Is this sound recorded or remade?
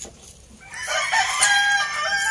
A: recorded